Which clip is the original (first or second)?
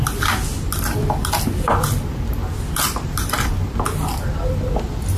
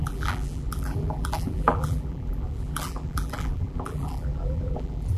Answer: first